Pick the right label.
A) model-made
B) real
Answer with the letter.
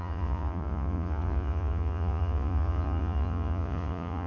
A